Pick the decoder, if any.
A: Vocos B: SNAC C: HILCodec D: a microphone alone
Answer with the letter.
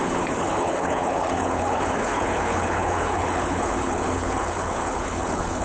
C